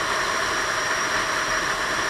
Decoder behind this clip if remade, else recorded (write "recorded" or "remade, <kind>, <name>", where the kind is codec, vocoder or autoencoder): recorded